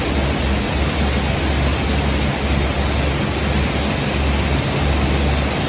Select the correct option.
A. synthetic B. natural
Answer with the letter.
B